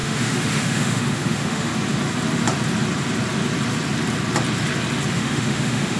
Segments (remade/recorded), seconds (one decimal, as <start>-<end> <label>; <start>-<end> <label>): 0.0-1.7 remade; 1.7-5.1 recorded; 5.1-6.0 remade